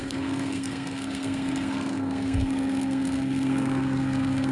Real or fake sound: fake